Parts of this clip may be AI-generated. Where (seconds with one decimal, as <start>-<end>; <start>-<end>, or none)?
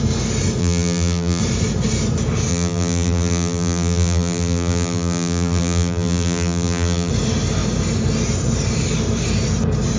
0.6-1.4; 2.5-7.1